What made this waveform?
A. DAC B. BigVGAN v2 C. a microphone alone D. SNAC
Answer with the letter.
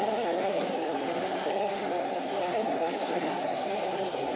D